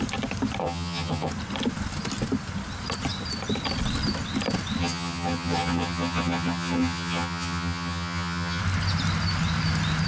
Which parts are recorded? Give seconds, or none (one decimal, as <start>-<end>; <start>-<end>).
0.0-0.6; 1.3-4.8; 8.6-10.1